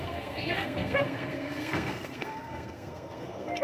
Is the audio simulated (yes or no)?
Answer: yes